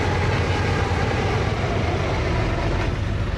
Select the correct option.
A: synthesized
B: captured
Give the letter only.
B